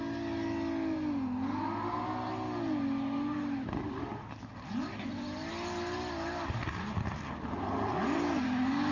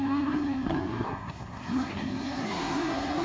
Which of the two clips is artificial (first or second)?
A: second